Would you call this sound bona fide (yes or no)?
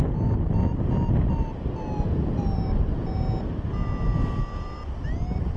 yes